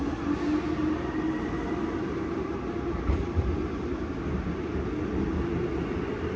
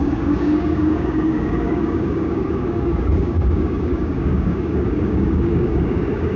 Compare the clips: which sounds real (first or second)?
first